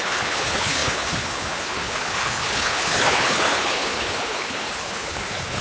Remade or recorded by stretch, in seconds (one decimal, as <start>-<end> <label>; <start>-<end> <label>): 0.0-5.6 remade

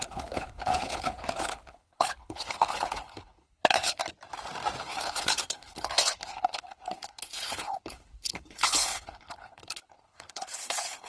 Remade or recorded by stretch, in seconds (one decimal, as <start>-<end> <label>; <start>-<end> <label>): 0.0-4.0 remade; 4.0-4.8 recorded; 4.8-11.1 remade

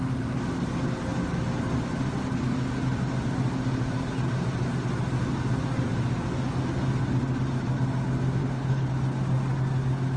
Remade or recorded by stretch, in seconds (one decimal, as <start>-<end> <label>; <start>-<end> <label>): 0.0-8.4 recorded; 8.4-8.9 remade; 8.9-10.2 recorded

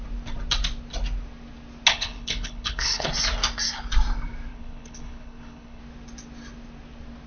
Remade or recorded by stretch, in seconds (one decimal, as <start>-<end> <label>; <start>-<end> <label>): 0.0-1.9 recorded; 1.9-3.1 remade; 3.1-4.5 recorded; 4.5-5.8 remade; 5.8-7.3 recorded

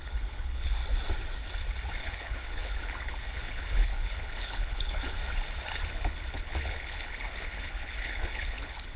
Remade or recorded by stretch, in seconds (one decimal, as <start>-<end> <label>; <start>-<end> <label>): 0.0-0.8 remade; 0.8-2.0 recorded; 2.0-5.2 remade; 5.2-5.9 recorded; 5.9-9.0 remade

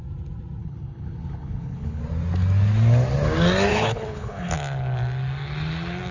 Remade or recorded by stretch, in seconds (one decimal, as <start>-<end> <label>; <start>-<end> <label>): 0.0-0.6 recorded; 0.6-2.0 remade; 2.0-3.7 recorded; 3.7-4.5 remade; 4.5-6.1 recorded

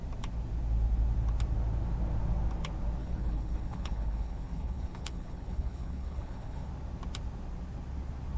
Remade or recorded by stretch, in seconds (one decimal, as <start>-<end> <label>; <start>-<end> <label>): 0.0-3.0 recorded; 3.0-6.7 remade; 6.7-8.4 recorded

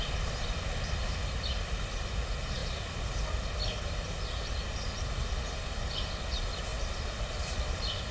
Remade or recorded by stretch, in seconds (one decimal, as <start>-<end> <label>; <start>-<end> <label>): 0.0-8.1 recorded